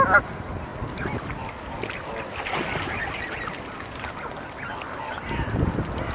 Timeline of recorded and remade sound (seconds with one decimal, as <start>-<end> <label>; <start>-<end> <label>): 0.0-6.1 recorded